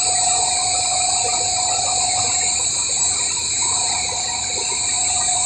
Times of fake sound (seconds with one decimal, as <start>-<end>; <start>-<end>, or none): none